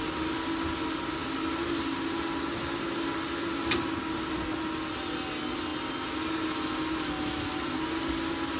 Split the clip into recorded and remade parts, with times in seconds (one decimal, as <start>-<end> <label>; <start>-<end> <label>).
0.0-8.6 recorded